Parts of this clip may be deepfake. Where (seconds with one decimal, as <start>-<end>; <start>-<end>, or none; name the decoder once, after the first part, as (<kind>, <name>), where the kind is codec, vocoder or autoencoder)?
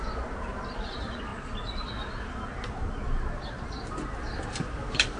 none